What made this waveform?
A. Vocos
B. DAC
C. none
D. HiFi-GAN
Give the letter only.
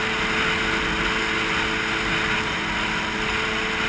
C